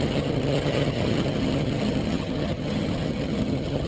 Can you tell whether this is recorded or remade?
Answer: remade